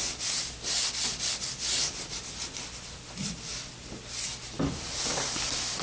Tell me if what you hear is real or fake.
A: real